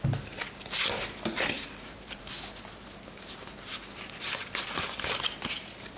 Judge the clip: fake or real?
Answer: real